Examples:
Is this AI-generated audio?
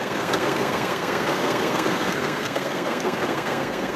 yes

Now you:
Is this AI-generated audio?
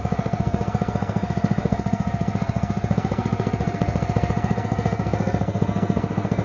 yes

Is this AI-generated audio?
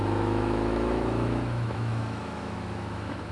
yes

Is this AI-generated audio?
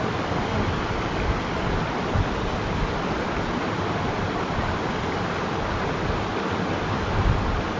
no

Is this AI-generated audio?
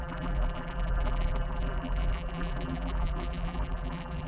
yes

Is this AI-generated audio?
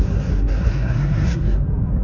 yes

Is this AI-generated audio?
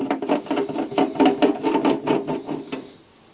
no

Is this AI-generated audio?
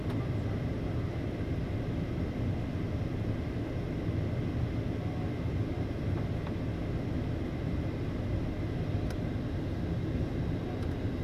no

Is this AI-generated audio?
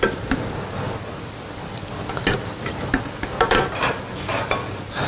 no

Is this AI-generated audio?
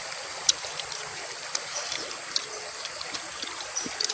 no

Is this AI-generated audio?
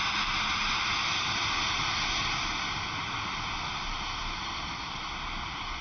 no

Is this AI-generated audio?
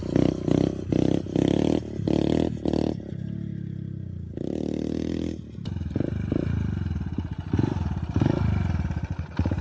no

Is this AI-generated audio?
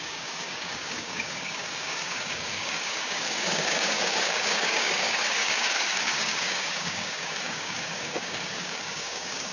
yes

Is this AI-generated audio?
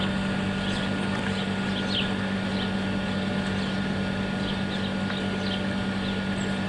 no